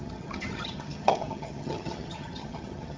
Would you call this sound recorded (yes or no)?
no